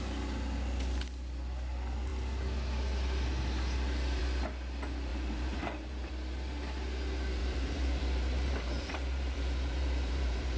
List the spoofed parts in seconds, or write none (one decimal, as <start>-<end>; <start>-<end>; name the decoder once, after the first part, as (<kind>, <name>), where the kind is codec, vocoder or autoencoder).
5.1-6.1 (vocoder, BigVGAN v2); 7.4-10.6